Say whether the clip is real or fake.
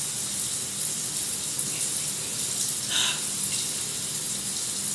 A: real